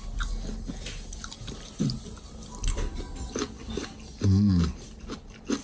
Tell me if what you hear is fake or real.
real